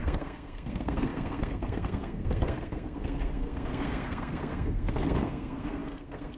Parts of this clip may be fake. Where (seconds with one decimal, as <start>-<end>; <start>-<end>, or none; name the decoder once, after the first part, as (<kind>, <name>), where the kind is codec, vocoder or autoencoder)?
0.0-6.4 (codec, SNAC)